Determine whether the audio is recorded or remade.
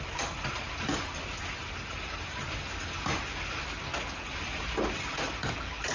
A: recorded